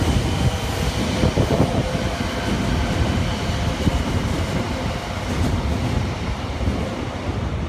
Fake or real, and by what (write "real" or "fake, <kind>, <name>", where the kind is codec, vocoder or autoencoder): real